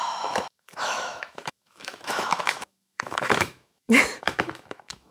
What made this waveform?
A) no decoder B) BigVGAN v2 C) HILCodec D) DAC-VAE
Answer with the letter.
D